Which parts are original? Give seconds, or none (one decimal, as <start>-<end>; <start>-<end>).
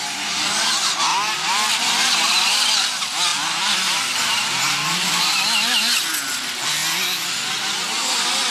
0.0-1.1; 1.8-3.3; 5.2-8.5